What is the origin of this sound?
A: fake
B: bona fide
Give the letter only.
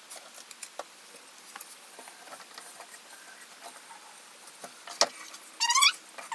B